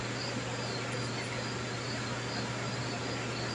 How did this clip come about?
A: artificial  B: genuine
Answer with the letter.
B